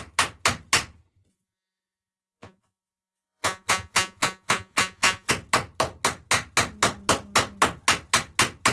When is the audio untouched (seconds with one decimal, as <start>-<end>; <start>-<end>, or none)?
0.0-1.3; 5.3-8.7